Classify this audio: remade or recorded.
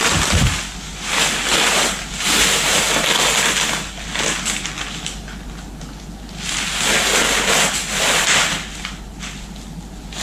recorded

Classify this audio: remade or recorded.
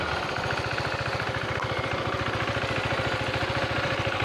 remade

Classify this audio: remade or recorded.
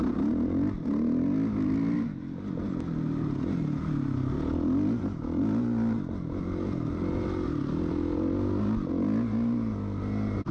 recorded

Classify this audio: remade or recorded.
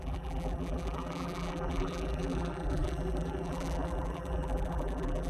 remade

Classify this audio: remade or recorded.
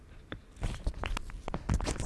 recorded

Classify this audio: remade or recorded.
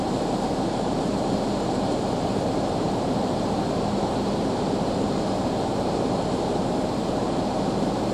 remade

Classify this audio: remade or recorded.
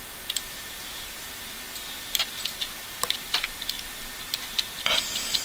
recorded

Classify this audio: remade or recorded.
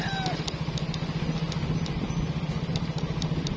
recorded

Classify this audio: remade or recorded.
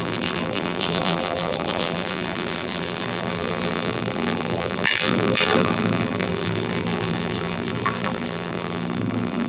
remade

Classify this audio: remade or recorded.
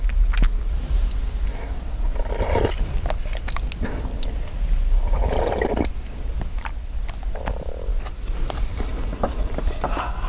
recorded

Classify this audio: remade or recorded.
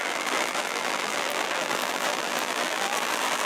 remade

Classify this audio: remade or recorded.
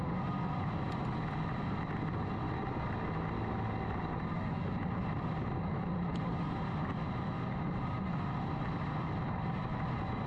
recorded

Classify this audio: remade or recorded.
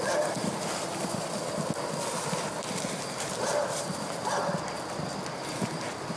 recorded